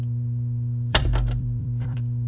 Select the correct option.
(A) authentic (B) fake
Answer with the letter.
B